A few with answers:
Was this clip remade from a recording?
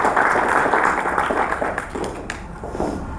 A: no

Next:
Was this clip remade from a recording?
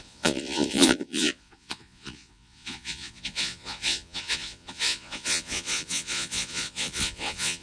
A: yes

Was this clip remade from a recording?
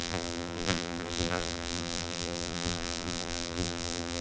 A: yes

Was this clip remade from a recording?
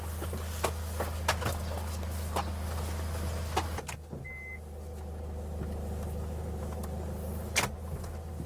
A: no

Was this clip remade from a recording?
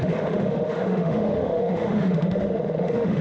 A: yes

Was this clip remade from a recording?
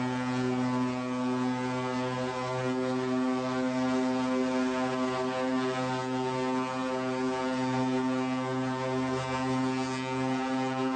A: no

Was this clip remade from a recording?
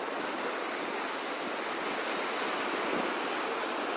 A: no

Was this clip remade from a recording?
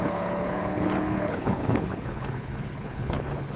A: yes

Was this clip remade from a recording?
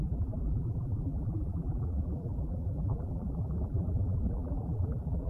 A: yes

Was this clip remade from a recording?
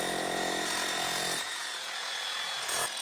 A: yes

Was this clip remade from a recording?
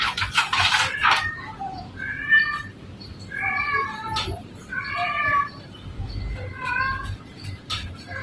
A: yes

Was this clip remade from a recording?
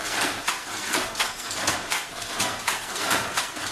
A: yes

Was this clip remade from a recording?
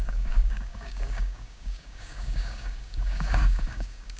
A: yes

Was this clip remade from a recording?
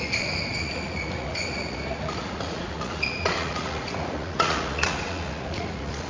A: yes